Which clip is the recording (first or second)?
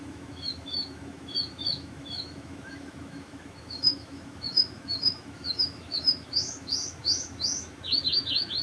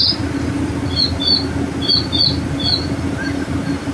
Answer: second